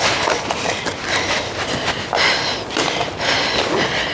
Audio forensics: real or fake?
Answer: real